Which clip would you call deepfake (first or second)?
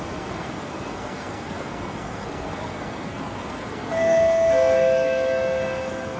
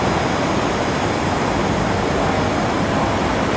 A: first